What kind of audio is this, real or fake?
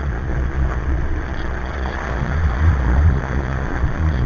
fake